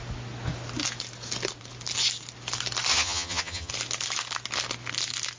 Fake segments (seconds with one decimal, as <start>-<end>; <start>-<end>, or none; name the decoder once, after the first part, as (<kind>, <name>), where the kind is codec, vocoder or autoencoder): 2.9-3.7 (vocoder, HiFi-GAN)